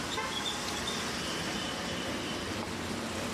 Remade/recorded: recorded